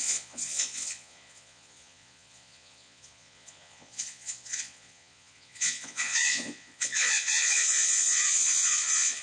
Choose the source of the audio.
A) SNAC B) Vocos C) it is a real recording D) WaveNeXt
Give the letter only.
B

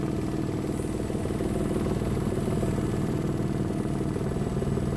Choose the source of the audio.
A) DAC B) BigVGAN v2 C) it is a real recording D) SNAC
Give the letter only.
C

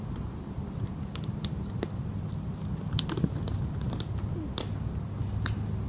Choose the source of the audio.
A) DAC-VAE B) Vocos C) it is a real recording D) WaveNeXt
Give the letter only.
C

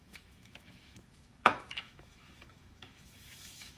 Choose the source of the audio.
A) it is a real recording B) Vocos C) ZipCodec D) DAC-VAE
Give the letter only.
D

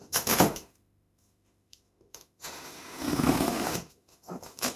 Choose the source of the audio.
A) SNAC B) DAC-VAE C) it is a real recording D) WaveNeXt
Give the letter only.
B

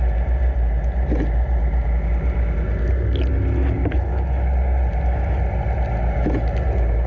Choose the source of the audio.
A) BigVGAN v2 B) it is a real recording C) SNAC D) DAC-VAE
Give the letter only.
B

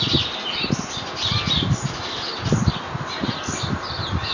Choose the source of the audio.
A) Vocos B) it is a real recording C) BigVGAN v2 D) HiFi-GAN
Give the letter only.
B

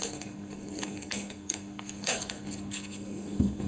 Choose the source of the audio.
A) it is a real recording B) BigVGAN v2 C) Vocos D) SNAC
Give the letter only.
D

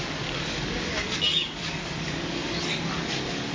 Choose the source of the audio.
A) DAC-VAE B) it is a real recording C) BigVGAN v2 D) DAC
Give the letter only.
D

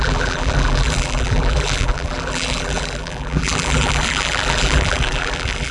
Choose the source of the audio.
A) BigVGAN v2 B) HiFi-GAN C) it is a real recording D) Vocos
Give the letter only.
A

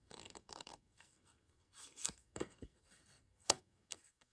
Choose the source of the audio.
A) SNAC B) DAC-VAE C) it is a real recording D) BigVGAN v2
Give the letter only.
A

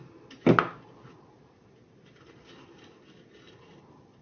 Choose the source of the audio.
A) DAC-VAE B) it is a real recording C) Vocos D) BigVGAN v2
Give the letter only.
B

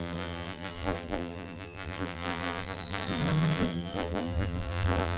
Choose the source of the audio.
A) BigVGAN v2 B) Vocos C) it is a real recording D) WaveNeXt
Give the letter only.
A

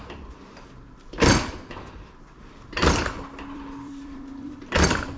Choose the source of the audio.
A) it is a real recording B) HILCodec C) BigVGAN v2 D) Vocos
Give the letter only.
C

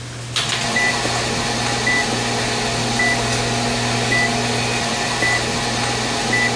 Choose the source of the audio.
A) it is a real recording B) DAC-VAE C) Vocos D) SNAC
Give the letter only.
A